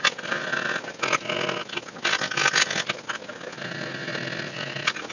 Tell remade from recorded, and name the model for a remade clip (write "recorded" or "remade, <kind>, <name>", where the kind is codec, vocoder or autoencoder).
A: recorded